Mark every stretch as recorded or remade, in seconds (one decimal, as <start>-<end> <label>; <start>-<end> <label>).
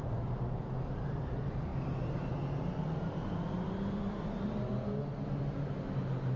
0.0-6.4 recorded